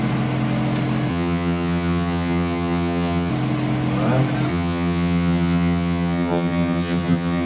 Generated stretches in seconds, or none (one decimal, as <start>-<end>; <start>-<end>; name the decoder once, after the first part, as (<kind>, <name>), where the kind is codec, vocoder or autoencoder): 1.1-3.3 (vocoder, HiFi-GAN); 4.5-7.5

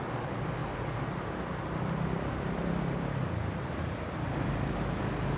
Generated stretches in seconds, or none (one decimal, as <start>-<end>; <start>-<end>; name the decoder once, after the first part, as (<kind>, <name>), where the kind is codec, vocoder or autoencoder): none

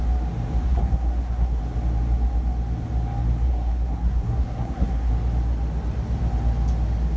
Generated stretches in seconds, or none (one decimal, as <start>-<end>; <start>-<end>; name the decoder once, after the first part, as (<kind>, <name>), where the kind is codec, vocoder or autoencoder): 0.7-1.6 (codec, SNAC); 3.5-5.1

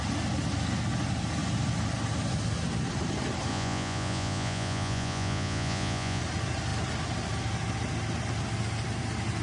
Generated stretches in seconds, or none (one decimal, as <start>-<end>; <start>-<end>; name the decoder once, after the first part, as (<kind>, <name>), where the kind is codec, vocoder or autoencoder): 3.5-6.2 (vocoder, Vocos)